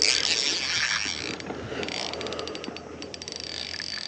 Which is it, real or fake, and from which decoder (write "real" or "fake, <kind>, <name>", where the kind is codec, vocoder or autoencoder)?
real